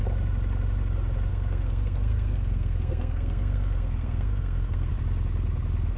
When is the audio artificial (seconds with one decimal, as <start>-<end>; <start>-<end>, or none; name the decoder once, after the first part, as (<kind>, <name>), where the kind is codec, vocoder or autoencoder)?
1.3-4.9 (codec, SNAC)